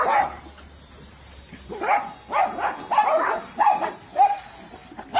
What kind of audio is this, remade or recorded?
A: recorded